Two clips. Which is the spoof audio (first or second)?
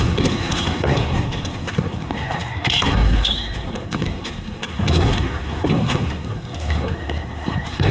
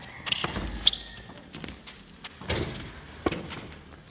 first